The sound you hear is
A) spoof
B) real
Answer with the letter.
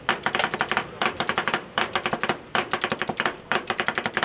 B